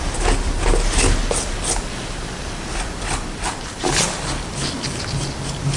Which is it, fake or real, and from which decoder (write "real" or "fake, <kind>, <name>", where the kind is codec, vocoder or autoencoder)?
real